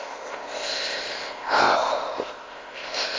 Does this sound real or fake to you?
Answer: fake